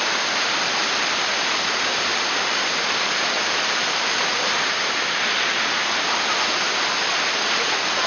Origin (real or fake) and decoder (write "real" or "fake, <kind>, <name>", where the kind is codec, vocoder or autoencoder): real